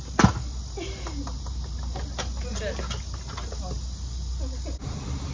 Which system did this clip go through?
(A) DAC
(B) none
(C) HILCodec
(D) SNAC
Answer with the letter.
B